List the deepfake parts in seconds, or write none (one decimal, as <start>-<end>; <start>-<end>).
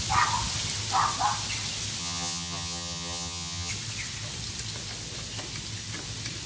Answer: 2.0-3.7